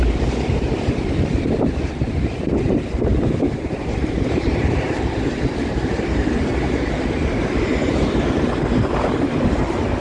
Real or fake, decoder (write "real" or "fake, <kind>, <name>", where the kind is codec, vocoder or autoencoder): fake, vocoder, BigVGAN v2